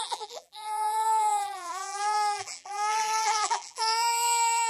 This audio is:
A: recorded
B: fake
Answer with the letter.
B